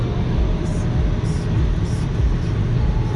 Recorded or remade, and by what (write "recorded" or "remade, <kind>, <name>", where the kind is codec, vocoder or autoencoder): recorded